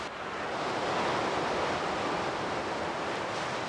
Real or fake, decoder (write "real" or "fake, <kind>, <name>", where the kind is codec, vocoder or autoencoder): real